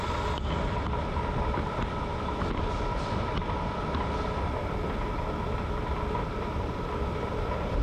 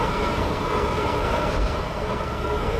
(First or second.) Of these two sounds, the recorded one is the first